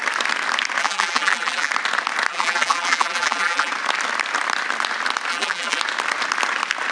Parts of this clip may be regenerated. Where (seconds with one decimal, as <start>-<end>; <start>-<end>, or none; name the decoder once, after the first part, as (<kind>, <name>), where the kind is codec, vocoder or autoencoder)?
0.8-1.7 (vocoder, BigVGAN v2); 2.3-3.7; 5.3-5.8